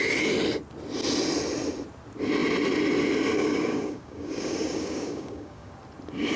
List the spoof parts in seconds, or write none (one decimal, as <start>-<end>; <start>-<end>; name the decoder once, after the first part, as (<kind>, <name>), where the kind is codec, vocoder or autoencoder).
3.4-5.7 (codec, DAC)